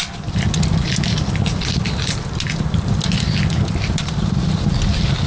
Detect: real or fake real